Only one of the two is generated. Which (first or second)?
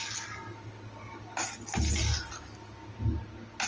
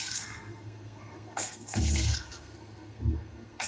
second